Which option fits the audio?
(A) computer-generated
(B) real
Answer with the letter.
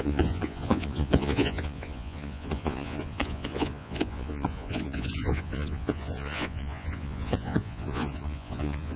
A